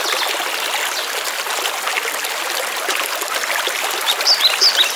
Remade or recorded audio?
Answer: recorded